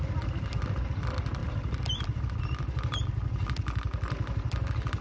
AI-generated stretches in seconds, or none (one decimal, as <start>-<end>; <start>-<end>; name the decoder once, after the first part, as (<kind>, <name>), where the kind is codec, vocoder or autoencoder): none